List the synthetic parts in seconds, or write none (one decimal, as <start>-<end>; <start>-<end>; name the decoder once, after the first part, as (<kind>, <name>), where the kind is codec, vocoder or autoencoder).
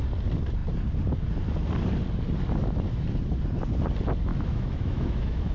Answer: 4.3-5.5 (autoencoder, DAC-VAE)